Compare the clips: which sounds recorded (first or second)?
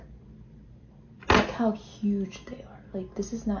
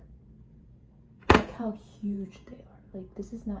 first